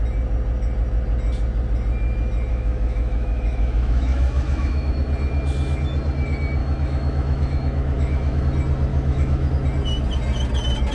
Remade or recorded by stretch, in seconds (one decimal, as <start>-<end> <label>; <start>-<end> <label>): 0.0-2.5 recorded; 2.5-4.9 remade; 4.9-6.6 recorded; 6.6-8.4 remade; 8.4-8.9 recorded; 8.9-9.5 remade; 9.5-10.9 recorded